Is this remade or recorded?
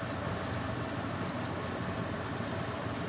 remade